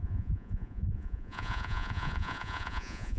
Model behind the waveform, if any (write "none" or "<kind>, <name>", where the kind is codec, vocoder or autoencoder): vocoder, Vocos